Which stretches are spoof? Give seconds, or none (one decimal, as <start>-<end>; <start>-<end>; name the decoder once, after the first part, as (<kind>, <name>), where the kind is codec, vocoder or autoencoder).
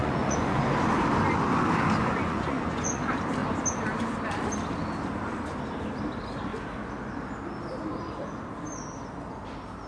0.0-0.6 (vocoder, Vocos); 2.0-3.0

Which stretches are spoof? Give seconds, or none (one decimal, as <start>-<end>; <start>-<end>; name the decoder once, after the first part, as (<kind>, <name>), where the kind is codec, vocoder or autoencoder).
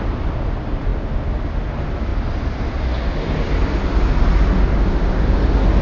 none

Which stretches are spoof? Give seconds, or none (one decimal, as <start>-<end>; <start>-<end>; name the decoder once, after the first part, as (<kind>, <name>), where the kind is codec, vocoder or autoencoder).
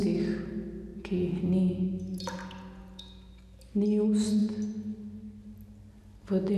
0.9-3.3 (vocoder, Vocos)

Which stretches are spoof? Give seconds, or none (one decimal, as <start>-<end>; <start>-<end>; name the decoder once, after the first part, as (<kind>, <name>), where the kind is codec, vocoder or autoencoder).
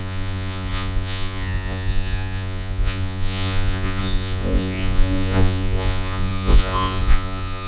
0.0-7.7 (vocoder, Vocos)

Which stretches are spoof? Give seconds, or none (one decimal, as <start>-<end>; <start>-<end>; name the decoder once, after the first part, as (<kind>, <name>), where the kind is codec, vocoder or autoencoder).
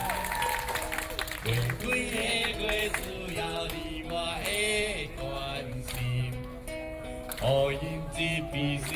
2.2-3.4 (vocoder, Vocos)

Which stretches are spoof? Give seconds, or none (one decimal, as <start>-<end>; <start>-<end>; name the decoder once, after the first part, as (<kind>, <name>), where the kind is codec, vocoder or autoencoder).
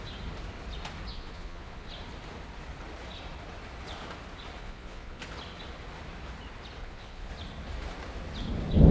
1.1-1.9 (vocoder, Vocos); 4.6-5.2; 6.8-7.3